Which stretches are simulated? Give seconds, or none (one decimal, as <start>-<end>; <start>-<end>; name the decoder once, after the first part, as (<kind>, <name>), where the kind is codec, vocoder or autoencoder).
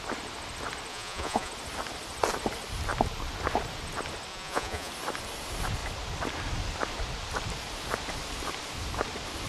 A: 0.9-1.5 (vocoder, Vocos); 4.3-4.9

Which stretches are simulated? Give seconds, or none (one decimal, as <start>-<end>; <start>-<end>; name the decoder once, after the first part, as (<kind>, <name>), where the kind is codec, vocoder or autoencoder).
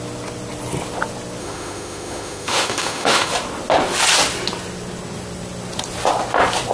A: 1.4-3.3 (autoencoder, DAC-VAE)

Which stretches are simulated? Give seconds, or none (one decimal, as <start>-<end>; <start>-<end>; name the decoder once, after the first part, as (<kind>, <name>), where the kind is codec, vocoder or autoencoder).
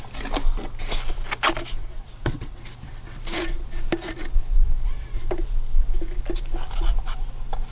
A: 1.8-2.6 (vocoder, WaveNeXt)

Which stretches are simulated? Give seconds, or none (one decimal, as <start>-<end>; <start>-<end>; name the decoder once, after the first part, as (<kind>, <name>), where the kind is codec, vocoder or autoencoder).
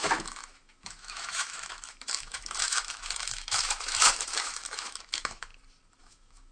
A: 0.0-5.5 (autoencoder, DAC-VAE); 6.0-6.5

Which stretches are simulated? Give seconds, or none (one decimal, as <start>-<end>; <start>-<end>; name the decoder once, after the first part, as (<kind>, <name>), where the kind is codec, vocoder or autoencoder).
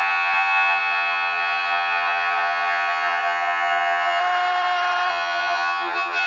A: 0.0-4.2 (vocoder, HiFi-GAN); 5.1-6.3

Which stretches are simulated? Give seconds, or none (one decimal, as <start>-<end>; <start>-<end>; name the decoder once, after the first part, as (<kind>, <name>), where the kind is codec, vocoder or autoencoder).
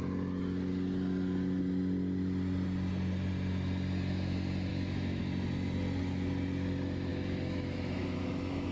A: 4.7-5.2 (autoencoder, DAC-VAE); 7.1-8.7